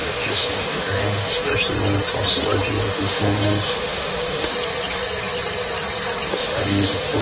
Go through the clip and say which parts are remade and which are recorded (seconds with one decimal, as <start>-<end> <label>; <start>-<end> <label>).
0.0-1.5 remade; 1.5-2.8 recorded; 2.8-4.5 remade; 4.5-6.3 recorded; 6.3-7.2 remade